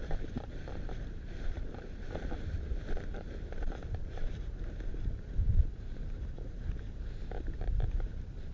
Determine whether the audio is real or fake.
fake